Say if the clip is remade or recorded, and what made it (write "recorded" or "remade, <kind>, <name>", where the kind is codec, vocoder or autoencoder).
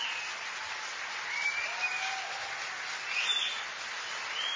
recorded